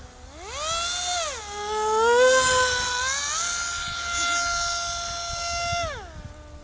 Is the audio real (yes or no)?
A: yes